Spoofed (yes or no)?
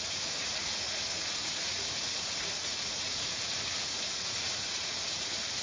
yes